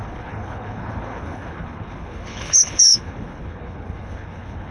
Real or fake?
fake